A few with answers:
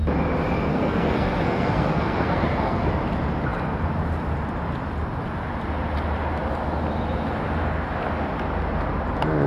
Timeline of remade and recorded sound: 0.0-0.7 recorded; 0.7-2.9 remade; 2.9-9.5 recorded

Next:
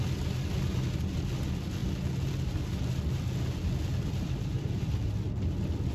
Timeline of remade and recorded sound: 0.0-5.9 recorded

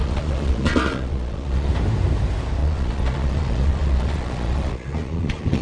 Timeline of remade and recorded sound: 0.0-1.7 remade; 1.7-2.6 recorded; 2.6-5.6 remade

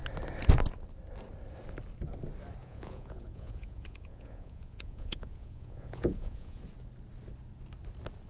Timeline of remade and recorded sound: 0.0-2.6 recorded; 2.6-6.6 remade; 6.6-8.3 recorded

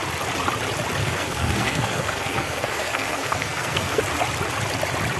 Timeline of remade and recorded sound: 0.0-1.0 recorded; 1.0-4.0 remade; 4.0-5.2 recorded

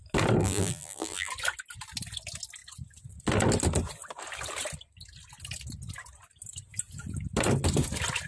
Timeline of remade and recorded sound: 0.0-0.4 recorded; 0.4-1.3 remade; 1.3-8.3 recorded